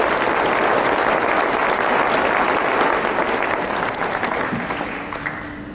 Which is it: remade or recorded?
recorded